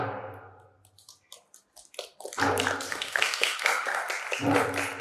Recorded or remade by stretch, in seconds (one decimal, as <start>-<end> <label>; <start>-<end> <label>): 0.0-2.9 recorded; 2.9-4.0 remade; 4.0-5.0 recorded